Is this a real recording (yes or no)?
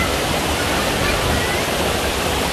yes